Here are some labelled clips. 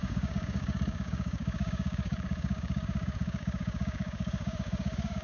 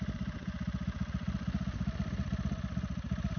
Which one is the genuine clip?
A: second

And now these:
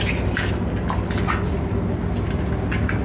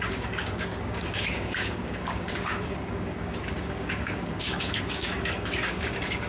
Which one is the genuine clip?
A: first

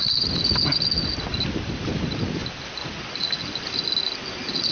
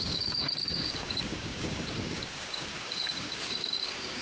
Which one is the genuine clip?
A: first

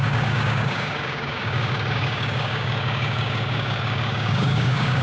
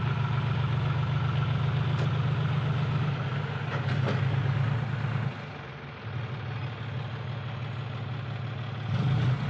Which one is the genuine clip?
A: second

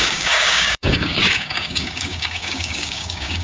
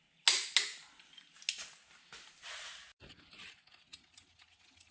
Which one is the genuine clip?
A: second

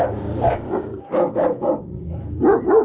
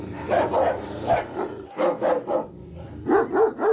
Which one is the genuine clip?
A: second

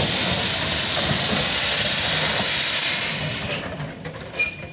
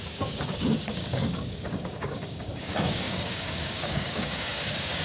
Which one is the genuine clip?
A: first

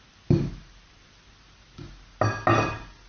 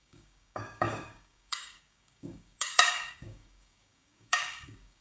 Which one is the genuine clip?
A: first